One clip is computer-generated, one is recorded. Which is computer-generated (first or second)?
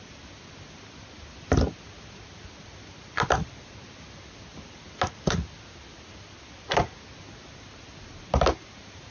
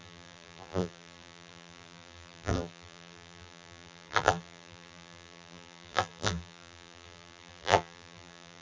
second